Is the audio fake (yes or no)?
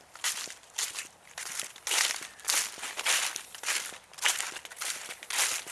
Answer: no